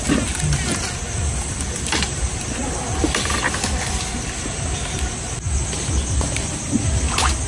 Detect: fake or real real